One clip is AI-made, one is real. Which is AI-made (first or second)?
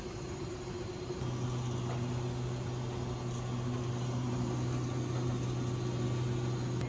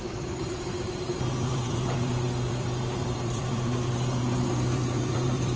second